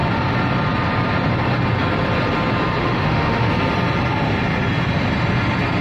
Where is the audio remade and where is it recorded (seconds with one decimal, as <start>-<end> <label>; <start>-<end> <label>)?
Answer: 0.0-2.8 recorded; 2.8-3.5 remade; 3.5-5.8 recorded